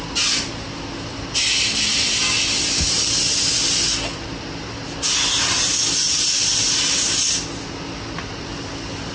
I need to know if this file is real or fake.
real